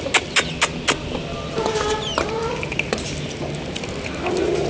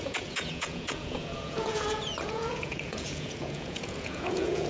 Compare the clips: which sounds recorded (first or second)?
first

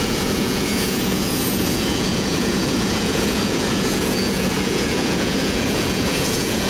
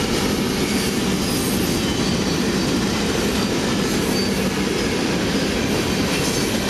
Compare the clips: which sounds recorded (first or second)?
second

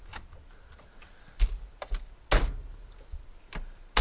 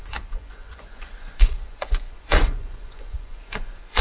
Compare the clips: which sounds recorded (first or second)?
first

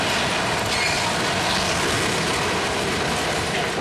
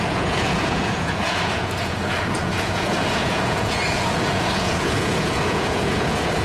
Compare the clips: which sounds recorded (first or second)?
first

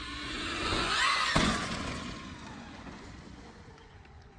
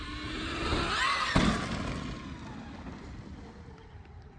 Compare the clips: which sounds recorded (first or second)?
second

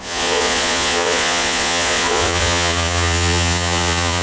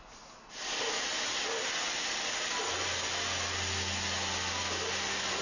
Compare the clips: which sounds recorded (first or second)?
second